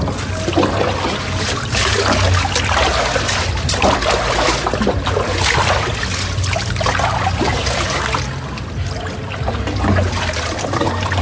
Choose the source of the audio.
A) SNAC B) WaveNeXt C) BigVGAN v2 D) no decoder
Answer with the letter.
D